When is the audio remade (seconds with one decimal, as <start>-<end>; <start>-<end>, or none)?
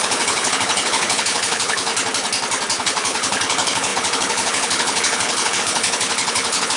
0.0-1.9; 2.8-6.8